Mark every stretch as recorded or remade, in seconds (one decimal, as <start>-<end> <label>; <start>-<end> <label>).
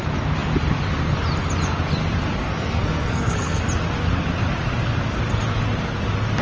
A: 0.0-2.4 recorded; 2.4-3.6 remade; 3.6-6.4 recorded